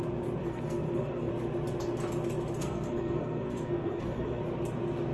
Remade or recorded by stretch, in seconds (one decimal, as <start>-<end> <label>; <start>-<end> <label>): 0.0-0.4 recorded; 0.4-1.3 remade; 1.3-2.6 recorded; 2.6-4.4 remade; 4.4-5.1 recorded